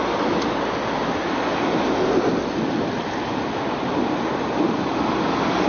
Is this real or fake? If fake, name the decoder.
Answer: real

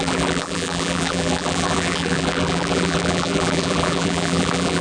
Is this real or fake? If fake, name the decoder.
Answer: fake, vocoder, BigVGAN v2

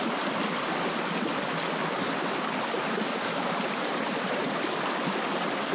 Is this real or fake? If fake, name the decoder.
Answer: real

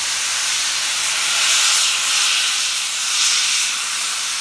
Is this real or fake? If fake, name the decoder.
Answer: fake, vocoder, BigVGAN v2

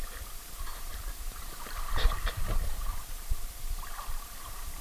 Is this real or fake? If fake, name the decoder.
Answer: fake, vocoder, BigVGAN v2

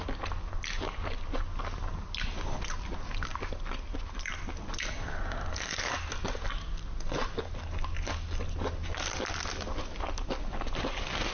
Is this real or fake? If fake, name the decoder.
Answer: real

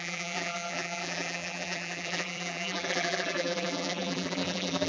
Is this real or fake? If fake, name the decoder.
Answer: fake, vocoder, BigVGAN v2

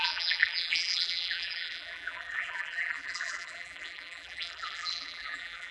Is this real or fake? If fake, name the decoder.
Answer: fake, vocoder, BigVGAN v2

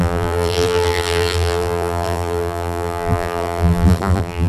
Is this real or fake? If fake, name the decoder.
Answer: fake, vocoder, BigVGAN v2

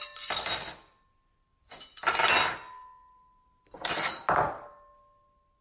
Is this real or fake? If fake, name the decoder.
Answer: real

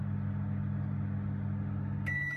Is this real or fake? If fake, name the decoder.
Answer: real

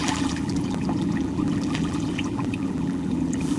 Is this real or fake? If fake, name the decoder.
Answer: fake, vocoder, BigVGAN v2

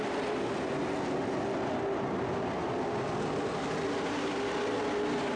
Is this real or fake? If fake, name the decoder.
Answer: real